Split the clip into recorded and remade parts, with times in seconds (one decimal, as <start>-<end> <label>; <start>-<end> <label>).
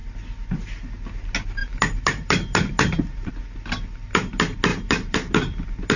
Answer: 0.0-1.6 recorded; 1.6-3.3 remade; 3.3-4.7 recorded; 4.7-5.3 remade; 5.3-6.0 recorded